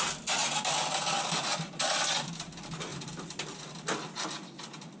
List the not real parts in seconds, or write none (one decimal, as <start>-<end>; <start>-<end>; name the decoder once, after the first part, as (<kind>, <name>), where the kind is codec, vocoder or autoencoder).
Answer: 2.9-3.6 (vocoder, BigVGAN v2)